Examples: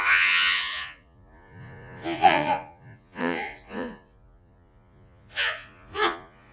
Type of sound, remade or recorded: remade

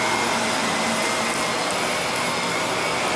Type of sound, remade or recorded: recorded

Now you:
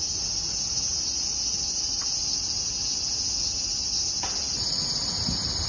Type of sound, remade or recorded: recorded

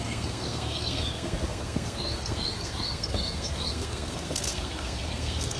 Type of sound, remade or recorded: remade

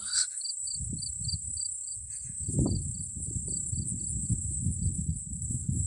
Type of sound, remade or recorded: recorded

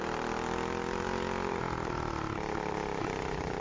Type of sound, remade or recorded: recorded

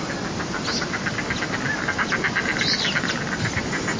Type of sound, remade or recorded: recorded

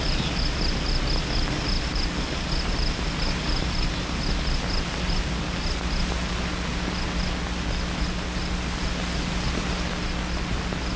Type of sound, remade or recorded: recorded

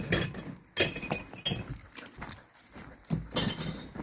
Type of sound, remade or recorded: recorded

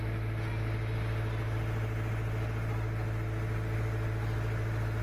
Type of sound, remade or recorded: recorded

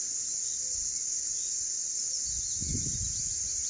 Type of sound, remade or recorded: recorded